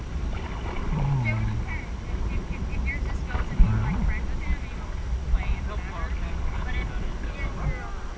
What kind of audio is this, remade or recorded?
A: recorded